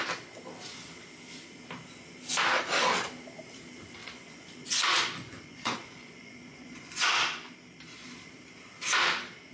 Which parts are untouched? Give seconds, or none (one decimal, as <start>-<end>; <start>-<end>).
0.0-4.0; 7.5-9.5